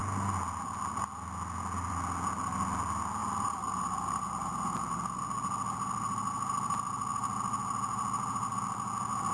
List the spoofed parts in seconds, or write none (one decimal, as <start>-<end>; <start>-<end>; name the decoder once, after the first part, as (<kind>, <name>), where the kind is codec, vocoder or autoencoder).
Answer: 3.2-5.2 (vocoder, BigVGAN v2)